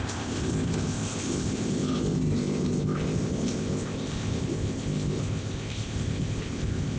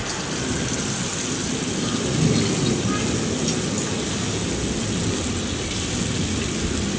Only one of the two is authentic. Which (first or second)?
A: second